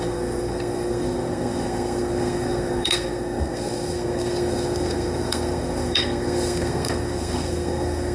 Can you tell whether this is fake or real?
fake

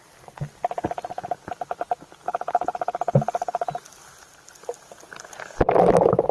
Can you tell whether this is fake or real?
real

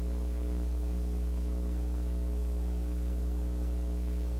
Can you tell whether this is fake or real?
fake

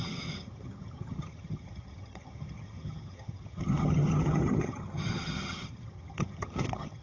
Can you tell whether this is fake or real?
fake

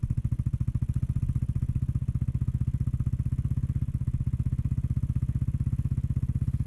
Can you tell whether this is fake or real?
real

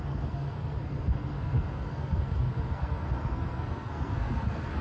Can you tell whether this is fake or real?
fake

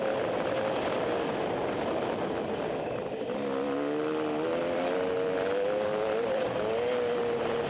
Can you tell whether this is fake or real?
real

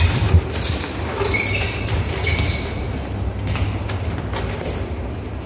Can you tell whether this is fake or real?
real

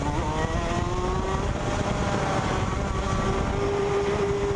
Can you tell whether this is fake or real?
real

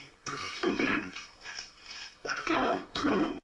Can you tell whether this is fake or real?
fake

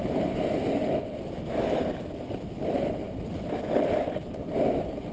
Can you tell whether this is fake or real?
real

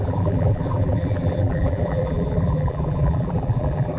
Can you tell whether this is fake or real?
fake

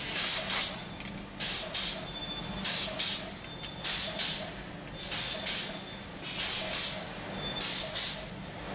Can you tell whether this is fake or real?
real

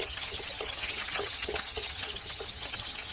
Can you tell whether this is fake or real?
fake